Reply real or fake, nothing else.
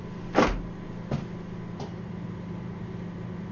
real